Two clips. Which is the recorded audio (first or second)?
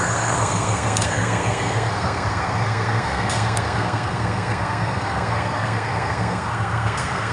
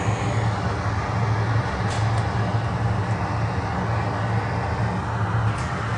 second